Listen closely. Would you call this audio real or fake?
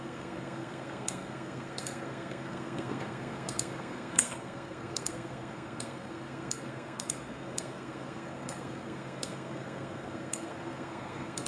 fake